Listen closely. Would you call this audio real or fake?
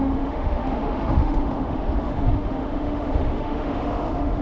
fake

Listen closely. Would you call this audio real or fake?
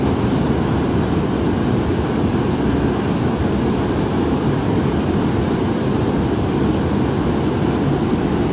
real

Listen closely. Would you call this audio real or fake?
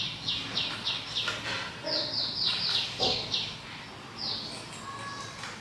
real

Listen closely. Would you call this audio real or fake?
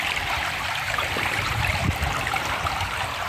fake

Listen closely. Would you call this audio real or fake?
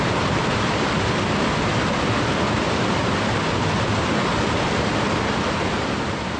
real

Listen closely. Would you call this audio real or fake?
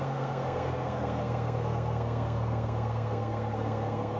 fake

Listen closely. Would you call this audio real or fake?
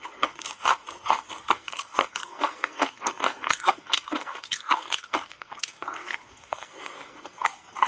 fake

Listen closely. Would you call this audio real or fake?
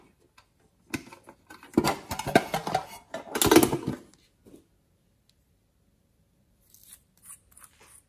real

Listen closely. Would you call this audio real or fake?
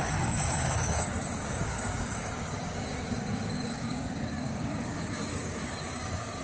fake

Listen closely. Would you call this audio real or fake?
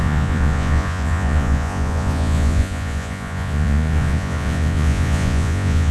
fake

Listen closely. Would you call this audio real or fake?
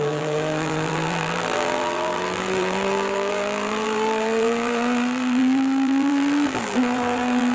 fake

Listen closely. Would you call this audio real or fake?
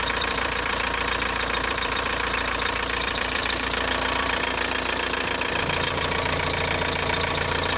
fake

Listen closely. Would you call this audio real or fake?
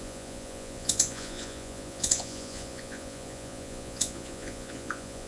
fake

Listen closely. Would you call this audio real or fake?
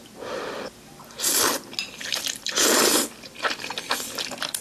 real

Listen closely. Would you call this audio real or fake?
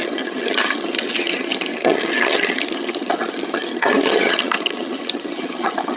fake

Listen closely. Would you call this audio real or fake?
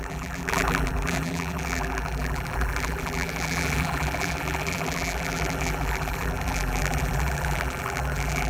fake